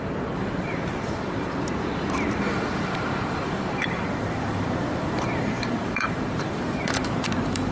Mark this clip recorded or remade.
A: remade